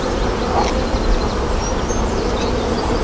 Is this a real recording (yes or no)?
yes